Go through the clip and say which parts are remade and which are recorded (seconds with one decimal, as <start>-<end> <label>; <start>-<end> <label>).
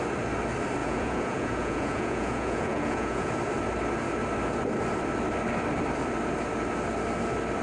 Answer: 0.0-0.8 recorded; 0.8-3.3 remade; 3.3-7.6 recorded